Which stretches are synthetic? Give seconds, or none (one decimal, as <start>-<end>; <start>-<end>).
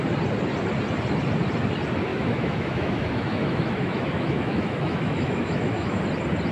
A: 2.1-6.0